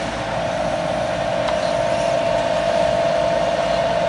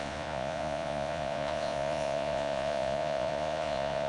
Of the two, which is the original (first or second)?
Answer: first